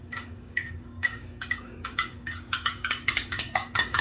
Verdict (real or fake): fake